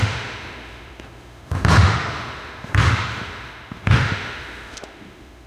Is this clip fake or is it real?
fake